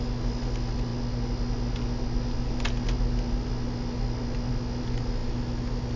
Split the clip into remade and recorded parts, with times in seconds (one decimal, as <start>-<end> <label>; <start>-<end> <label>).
0.0-6.0 recorded